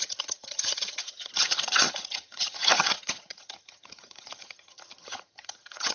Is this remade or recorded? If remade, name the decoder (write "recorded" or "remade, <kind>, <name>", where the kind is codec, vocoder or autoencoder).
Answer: remade, vocoder, HiFi-GAN